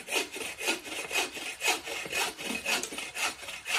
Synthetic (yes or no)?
no